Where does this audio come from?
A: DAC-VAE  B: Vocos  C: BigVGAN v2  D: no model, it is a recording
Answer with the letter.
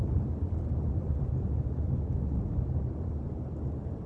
D